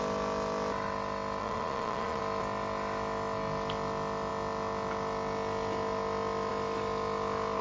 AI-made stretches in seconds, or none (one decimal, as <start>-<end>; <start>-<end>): 1.4-2.2